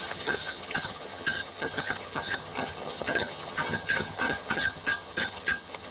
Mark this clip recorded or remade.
remade